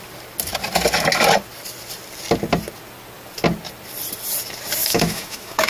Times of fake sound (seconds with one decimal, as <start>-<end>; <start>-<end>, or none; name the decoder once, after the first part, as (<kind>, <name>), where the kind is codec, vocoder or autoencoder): 4.8-5.7 (autoencoder, DAC-VAE)